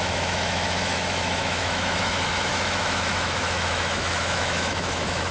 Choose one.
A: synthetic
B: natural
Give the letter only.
A